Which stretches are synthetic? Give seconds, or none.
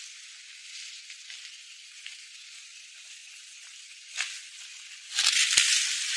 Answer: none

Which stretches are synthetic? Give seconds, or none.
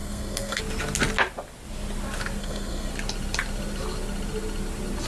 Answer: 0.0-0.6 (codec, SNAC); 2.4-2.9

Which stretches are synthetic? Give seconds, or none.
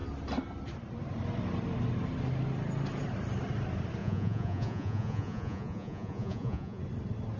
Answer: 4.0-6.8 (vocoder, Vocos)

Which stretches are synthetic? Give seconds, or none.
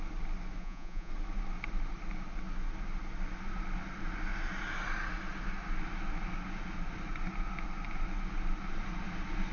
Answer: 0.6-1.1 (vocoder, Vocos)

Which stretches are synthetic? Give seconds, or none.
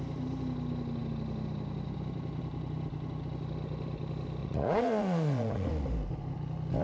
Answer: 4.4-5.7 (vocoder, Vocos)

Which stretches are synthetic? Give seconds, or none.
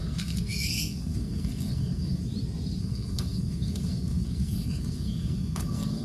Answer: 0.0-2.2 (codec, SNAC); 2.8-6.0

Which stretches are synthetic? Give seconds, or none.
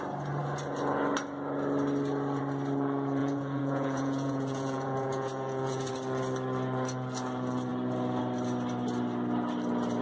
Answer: 3.2-5.9 (vocoder, Vocos)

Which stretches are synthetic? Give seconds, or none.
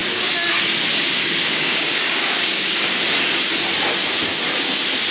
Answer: 0.9-3.0 (codec, DAC)